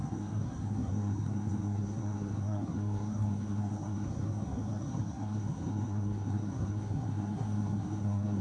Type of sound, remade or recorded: remade